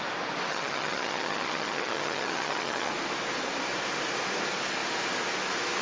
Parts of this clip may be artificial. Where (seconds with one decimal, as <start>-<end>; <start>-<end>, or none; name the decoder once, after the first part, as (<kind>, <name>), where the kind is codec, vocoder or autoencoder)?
0.5-2.9 (vocoder, HiFi-GAN)